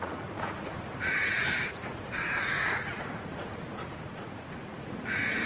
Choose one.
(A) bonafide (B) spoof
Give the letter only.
B